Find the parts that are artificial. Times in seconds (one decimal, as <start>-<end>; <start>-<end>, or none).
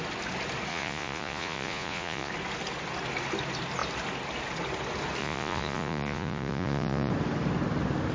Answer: 0.7-2.3; 5.2-7.1